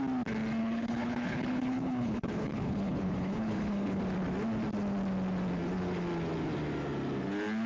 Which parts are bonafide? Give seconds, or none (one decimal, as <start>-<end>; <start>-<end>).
0.0-0.6; 4.0-7.7